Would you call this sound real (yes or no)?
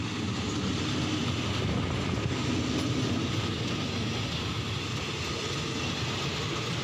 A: yes